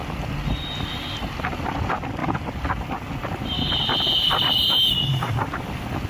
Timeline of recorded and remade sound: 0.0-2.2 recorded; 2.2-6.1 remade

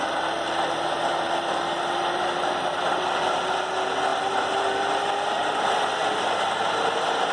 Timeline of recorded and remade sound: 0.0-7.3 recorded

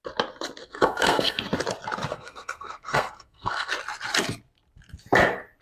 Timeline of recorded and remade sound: 0.0-0.6 recorded; 0.6-1.4 remade; 1.4-2.1 recorded; 2.1-3.7 remade; 3.7-5.6 recorded

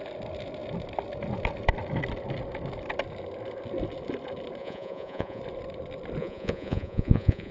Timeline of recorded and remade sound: 0.0-4.6 recorded; 4.6-5.4 remade; 5.4-6.2 recorded; 6.2-7.5 remade